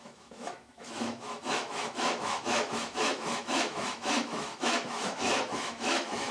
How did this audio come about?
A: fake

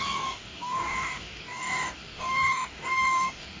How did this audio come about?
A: fake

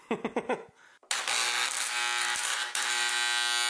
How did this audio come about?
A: real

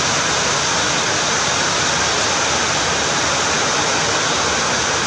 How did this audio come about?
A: real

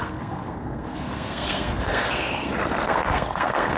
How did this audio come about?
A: fake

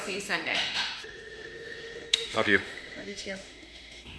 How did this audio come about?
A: fake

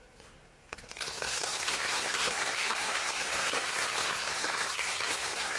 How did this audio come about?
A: fake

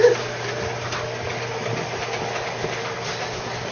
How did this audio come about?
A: real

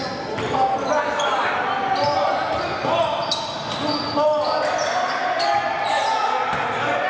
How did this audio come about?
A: real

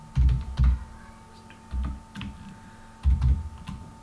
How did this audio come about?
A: real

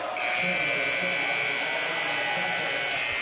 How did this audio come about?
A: real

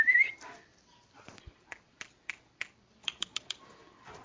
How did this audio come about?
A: fake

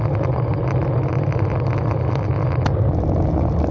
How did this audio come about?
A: real